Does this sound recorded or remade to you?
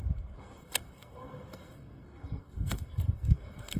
remade